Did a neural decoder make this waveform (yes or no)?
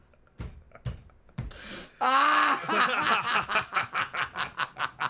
no